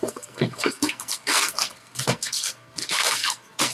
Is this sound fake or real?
fake